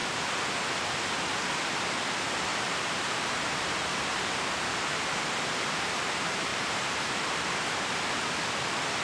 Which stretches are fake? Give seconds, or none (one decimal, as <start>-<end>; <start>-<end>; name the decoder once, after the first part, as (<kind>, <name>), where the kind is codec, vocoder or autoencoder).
2.5-5.8 (vocoder, BigVGAN v2); 6.5-8.1

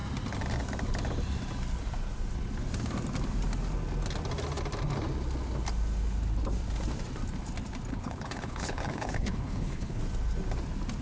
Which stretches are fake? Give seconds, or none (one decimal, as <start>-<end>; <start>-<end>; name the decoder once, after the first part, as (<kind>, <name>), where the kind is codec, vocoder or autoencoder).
7.9-10.0 (codec, HILCodec)

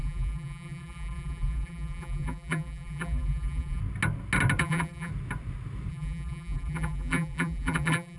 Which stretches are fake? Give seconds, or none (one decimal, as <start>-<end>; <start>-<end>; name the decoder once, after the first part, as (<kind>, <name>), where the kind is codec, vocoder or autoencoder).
0.0-3.8 (vocoder, BigVGAN v2); 4.6-5.1; 5.9-8.2

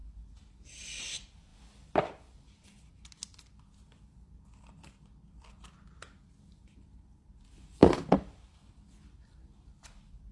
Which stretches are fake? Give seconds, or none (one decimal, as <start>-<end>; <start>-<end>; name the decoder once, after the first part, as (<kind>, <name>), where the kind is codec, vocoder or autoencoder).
none

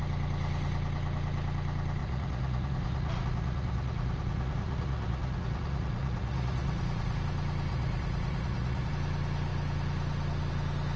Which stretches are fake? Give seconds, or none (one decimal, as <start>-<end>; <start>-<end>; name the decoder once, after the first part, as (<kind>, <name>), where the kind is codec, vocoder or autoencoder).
2.0-7.2 (vocoder, Vocos); 7.7-8.9

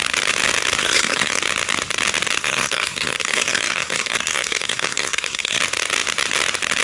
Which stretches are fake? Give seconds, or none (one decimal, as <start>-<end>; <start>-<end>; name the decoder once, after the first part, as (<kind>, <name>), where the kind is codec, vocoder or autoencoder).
0.8-1.4 (codec, SNAC); 2.4-5.6

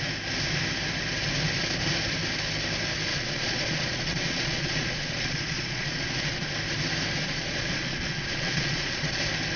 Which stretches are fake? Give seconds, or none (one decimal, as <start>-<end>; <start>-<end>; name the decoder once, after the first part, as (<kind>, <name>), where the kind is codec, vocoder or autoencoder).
3.1-6.5 (vocoder, Vocos); 7.2-9.2

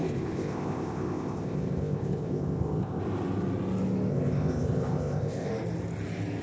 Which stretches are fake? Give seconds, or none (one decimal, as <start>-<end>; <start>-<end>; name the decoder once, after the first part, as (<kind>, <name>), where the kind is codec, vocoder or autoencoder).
0.0-3.0 (codec, ZipCodec); 4.1-5.5